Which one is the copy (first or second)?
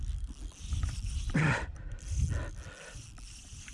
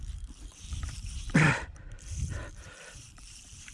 second